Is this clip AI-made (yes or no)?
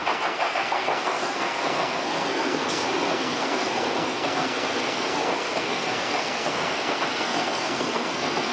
yes